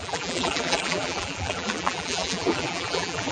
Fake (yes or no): yes